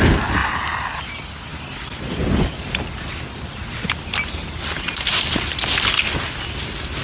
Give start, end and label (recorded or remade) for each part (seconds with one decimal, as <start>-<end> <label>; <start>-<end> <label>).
0.0-7.0 recorded